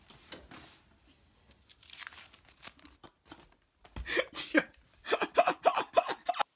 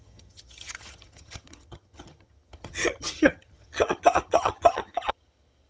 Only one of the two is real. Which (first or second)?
first